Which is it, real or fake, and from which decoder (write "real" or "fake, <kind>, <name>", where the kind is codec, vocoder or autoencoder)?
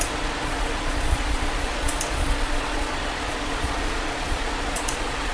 fake, vocoder, Vocos